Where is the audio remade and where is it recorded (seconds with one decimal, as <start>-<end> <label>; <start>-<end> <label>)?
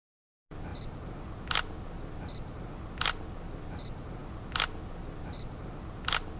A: 0.0-6.4 recorded